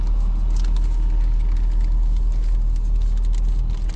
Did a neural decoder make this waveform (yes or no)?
no